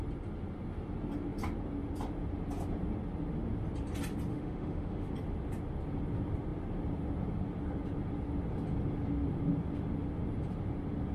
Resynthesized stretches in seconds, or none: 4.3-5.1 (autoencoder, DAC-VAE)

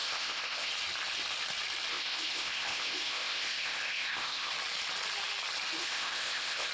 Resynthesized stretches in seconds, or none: 0.0-0.7 (codec, ZipCodec); 1.9-4.5; 5.8-6.7

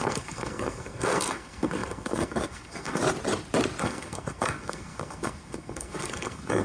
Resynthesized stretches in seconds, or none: 0.0-3.0 (codec, SNAC); 3.8-6.6

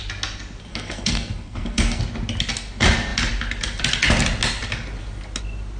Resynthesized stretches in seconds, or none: 0.7-2.0 (codec, SNAC)

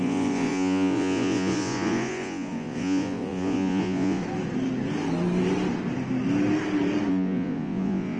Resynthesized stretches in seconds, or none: 0.0-4.2 (vocoder, Vocos); 7.1-8.2

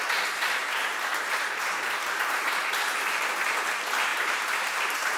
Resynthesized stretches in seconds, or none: 0.6-2.6 (vocoder, BigVGAN v2); 4.1-5.2

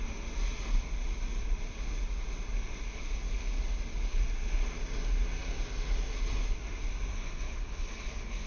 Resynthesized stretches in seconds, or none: 7.1-8.5 (codec, HILCodec)

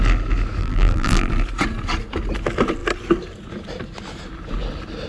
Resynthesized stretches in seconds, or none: 0.6-1.3 (vocoder, BigVGAN v2)